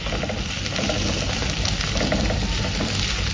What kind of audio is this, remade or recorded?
recorded